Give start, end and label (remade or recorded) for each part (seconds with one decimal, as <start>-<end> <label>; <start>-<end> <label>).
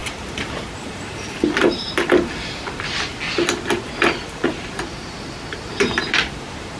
0.0-3.1 remade; 3.1-4.2 recorded; 4.2-6.8 remade